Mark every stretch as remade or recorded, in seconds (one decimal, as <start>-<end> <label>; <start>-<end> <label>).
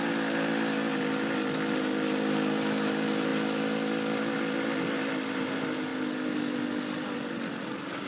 0.0-8.1 recorded